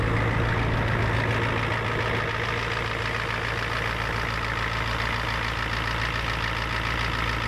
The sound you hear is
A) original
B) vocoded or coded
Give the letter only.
A